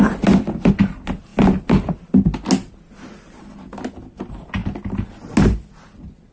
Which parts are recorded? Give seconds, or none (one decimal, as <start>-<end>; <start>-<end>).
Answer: 0.0-6.3